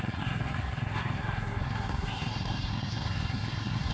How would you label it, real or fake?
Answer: fake